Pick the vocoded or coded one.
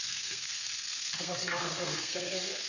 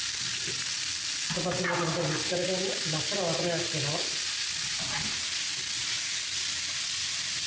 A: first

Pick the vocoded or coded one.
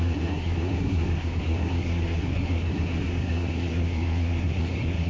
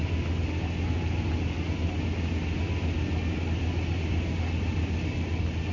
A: first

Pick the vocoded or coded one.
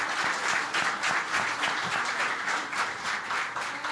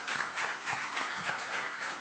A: second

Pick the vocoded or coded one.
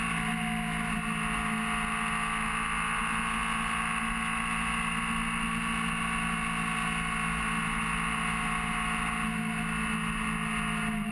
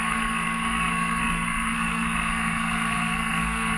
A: second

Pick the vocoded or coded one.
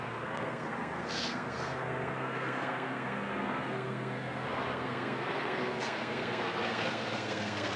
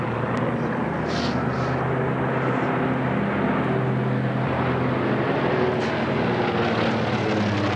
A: first